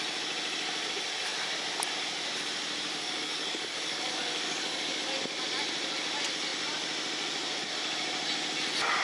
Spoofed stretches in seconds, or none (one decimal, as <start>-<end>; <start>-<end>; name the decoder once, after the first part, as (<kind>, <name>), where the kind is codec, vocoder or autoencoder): 2.9-5.0 (codec, DAC)